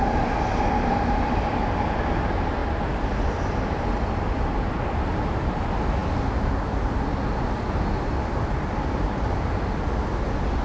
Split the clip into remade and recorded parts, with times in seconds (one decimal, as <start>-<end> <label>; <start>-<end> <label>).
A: 0.0-10.6 recorded